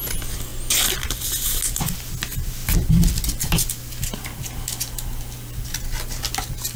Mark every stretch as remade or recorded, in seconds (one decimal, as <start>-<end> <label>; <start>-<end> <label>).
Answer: 0.0-6.8 recorded